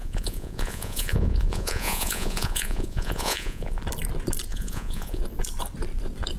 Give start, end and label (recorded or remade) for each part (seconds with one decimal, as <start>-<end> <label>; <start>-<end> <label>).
0.0-3.8 remade; 3.8-4.5 recorded; 4.5-5.2 remade; 5.2-6.4 recorded